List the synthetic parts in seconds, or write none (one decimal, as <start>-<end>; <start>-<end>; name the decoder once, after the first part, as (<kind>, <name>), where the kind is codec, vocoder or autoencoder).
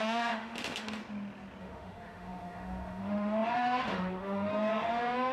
0.0-1.0 (autoencoder, DAC-VAE); 1.6-5.3